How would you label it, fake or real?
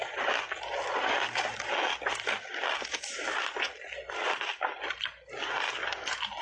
real